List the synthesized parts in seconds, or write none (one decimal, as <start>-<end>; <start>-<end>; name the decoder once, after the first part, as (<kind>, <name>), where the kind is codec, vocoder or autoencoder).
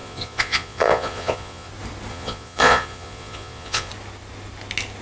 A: 0.0-1.7 (vocoder, Vocos); 2.1-3.9